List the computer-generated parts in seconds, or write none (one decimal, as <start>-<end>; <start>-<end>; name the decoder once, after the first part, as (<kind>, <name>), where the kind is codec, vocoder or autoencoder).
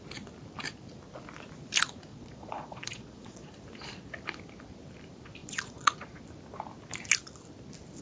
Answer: 2.1-3.5 (vocoder, Vocos); 5.4-6.2